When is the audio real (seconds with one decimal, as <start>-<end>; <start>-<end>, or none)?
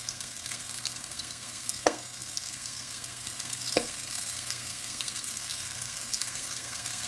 none